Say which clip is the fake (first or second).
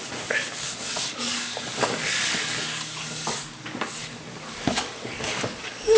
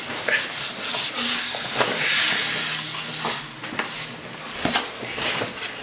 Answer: first